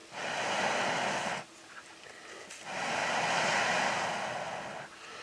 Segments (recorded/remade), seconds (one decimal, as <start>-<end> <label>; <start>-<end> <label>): 0.0-5.2 recorded